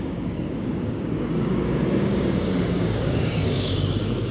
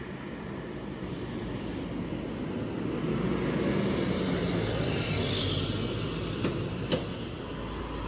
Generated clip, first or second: first